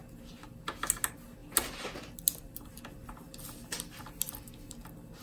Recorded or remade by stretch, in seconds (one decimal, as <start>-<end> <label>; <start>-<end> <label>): 0.0-5.2 recorded